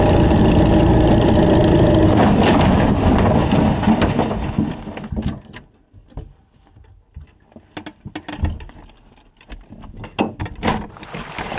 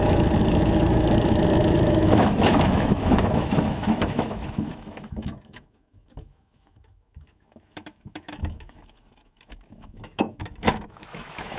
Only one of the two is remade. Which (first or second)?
second